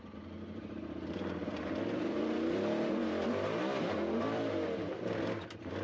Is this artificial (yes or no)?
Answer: yes